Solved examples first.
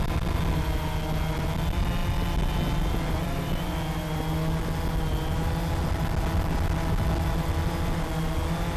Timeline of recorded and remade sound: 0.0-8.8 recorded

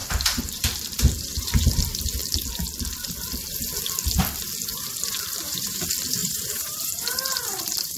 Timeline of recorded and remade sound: 0.0-1.5 remade; 1.5-4.7 recorded; 4.7-5.8 remade; 5.8-6.2 recorded; 6.2-8.0 remade

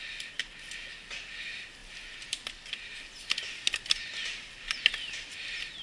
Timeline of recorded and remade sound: 0.0-5.8 recorded

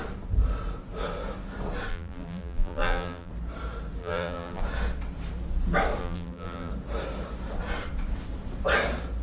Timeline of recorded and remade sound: 0.0-1.9 recorded; 1.9-3.3 remade; 3.3-4.0 recorded; 4.0-4.6 remade; 4.6-6.0 recorded; 6.0-6.7 remade; 6.7-9.2 recorded